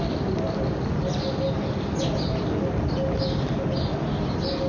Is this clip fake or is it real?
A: real